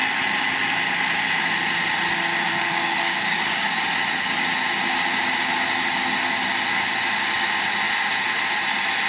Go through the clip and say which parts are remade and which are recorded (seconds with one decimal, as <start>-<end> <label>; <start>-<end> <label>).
0.0-2.5 recorded; 2.5-3.8 remade; 3.8-9.1 recorded